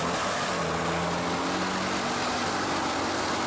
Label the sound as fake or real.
real